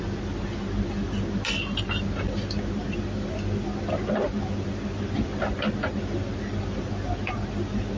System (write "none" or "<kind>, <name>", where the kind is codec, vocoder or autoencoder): none